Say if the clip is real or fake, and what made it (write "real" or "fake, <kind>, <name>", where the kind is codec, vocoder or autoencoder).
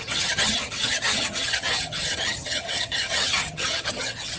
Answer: fake, vocoder, HiFi-GAN